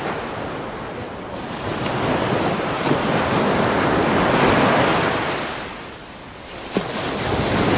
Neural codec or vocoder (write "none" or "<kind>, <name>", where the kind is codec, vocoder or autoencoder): none